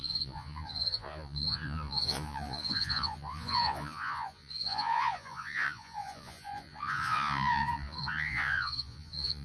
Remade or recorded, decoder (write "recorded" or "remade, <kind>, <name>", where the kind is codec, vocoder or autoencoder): remade, vocoder, Vocos